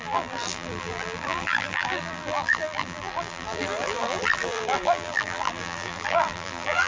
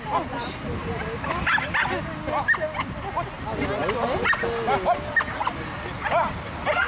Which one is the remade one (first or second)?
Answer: first